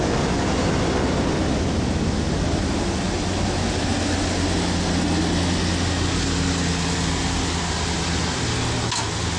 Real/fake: real